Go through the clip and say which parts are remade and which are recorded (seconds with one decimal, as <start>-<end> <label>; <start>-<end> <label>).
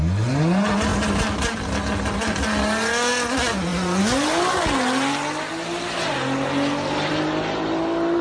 0.0-8.2 recorded